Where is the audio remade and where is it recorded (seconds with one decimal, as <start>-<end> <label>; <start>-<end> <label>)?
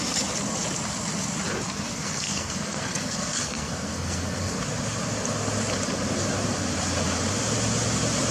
0.0-1.9 recorded; 1.9-4.5 remade; 4.5-8.3 recorded